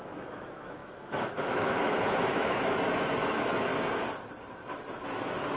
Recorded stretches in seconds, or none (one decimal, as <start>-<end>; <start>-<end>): 3.7-4.9